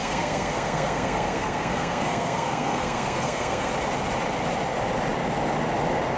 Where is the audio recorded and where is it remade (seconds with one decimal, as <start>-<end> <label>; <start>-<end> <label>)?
0.0-3.7 remade; 3.7-6.2 recorded